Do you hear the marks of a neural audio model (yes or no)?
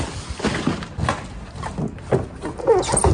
no